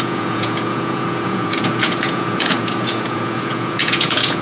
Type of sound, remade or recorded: remade